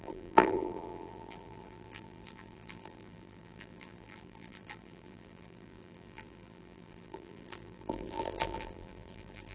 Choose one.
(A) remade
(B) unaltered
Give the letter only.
A